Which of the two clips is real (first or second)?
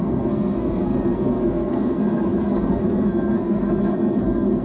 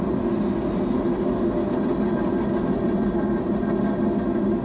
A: second